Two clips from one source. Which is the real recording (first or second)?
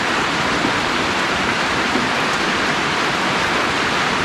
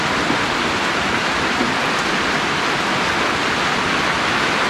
second